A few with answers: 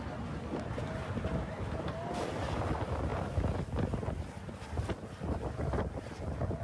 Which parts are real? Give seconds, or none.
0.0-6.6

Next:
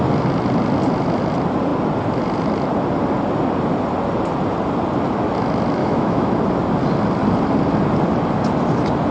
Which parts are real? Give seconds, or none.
0.0-5.8; 6.3-9.1

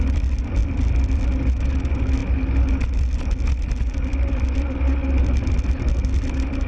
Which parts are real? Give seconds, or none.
0.0-0.6; 1.2-6.7

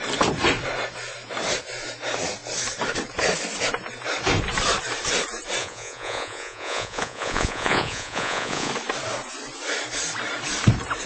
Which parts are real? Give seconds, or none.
0.0-5.6; 8.7-11.1

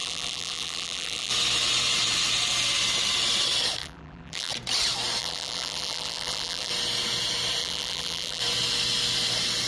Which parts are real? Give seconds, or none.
1.3-3.8; 4.5-5.2; 6.7-7.6; 8.4-9.7

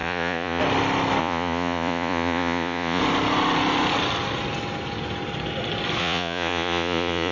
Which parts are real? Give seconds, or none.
0.6-1.2; 3.0-6.0

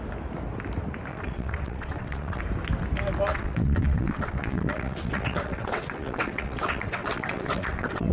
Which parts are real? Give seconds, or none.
0.0-1.1; 2.4-3.3

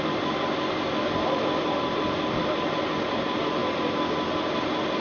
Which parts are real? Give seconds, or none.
0.0-5.0